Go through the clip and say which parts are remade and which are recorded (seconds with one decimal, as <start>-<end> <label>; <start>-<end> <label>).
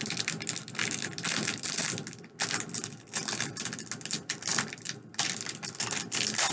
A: 0.0-6.5 recorded